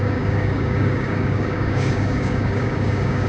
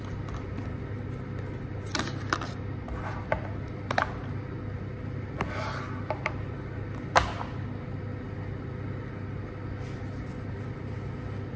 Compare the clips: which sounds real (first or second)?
second